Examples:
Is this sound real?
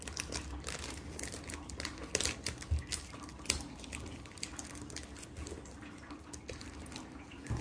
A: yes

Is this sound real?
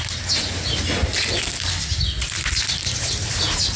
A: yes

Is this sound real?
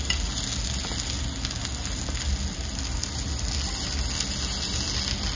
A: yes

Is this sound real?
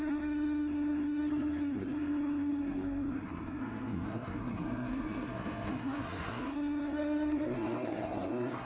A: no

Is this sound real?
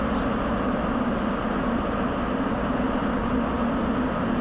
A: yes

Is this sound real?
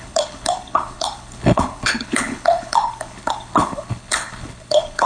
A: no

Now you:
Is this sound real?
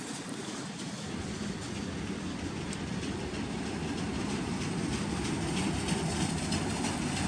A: yes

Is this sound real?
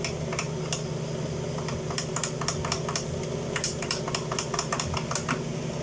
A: yes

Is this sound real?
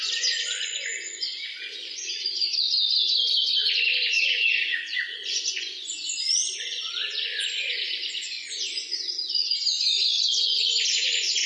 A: no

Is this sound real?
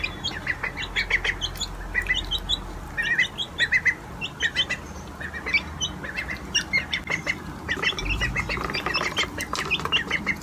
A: yes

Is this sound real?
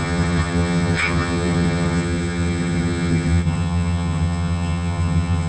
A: no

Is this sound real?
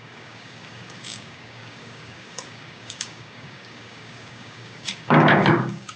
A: no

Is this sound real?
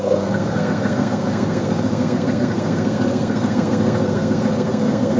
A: no